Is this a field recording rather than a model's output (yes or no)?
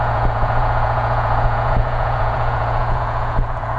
no